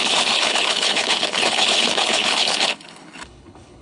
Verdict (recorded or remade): remade